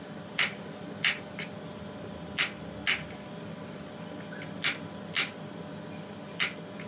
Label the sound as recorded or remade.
recorded